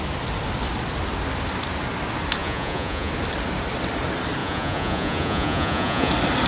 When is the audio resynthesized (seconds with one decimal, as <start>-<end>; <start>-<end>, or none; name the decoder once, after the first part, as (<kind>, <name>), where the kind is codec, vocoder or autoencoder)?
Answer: 2.4-3.1 (vocoder, Vocos); 4.4-6.1